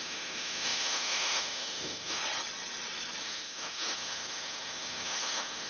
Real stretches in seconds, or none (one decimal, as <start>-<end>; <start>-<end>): 2.2-3.2